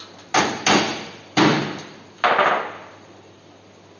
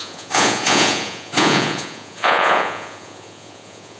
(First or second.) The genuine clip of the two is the first